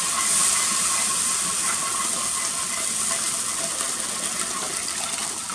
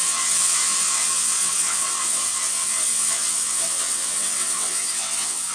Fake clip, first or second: second